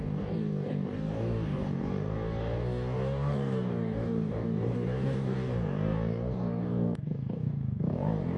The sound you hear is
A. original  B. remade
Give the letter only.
B